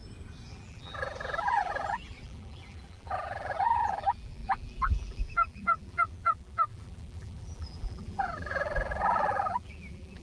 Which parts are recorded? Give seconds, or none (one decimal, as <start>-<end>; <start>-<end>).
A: 0.0-0.5